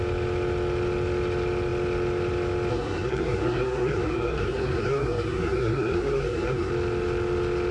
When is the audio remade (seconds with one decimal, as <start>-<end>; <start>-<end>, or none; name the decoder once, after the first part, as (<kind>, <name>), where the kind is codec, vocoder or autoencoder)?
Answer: 2.7-6.7 (codec, SNAC)